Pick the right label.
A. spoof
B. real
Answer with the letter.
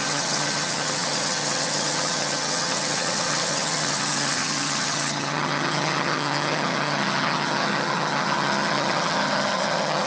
A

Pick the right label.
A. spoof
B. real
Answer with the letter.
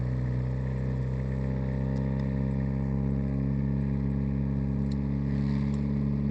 B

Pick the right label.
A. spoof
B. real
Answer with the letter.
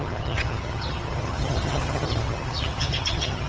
A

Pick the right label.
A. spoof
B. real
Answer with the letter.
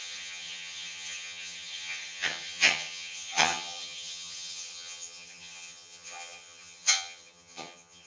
A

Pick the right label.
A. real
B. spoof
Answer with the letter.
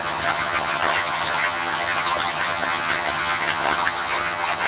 B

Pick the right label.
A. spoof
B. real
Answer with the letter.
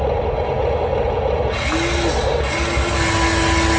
B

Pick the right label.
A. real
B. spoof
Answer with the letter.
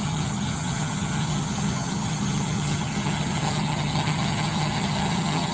B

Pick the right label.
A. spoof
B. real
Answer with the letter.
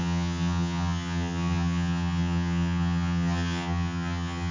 A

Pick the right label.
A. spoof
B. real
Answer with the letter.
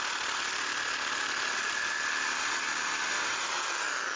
B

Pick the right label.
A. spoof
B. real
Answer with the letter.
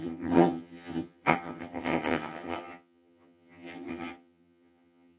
A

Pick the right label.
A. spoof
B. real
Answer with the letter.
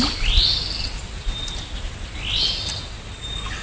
B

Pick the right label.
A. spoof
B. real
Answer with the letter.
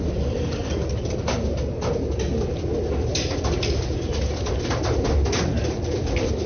B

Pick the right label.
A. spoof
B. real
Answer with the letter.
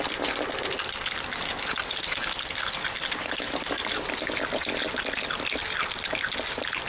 B